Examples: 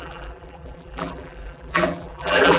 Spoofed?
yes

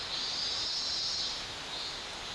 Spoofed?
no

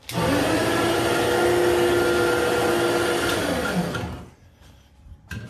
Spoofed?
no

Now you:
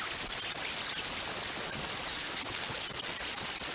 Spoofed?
no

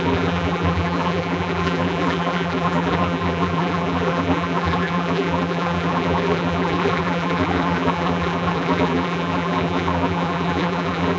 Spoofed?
yes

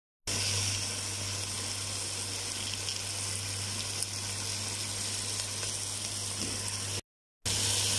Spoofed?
no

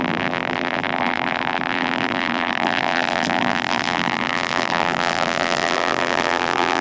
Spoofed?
yes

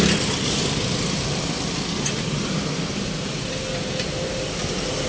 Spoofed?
no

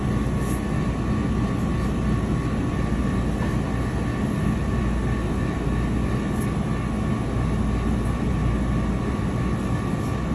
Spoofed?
no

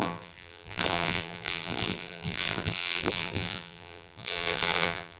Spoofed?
yes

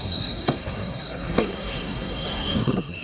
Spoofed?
yes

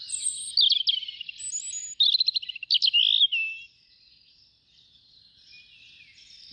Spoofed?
no